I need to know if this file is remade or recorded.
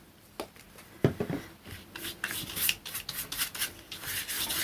recorded